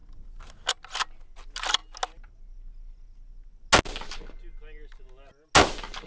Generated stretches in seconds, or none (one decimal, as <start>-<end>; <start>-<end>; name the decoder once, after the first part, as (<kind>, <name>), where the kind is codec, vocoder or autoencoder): none